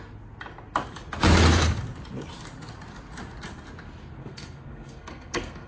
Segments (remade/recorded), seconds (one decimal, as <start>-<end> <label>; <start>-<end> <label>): 0.0-4.2 recorded; 4.2-5.7 remade